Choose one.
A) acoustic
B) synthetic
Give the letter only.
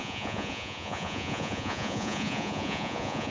B